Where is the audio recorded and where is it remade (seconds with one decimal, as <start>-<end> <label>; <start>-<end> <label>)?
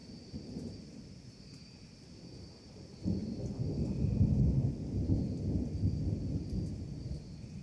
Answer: 0.0-3.2 remade; 3.2-6.7 recorded; 6.7-7.6 remade